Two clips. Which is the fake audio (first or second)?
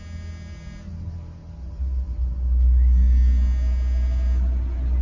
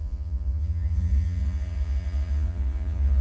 second